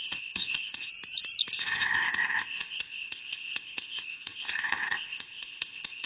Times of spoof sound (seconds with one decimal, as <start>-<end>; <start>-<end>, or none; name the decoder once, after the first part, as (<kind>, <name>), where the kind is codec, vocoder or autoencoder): 0.0-0.9 (codec, ZipCodec); 1.5-6.1